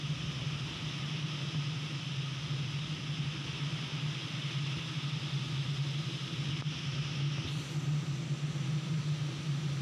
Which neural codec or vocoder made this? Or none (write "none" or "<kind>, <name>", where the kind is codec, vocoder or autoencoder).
none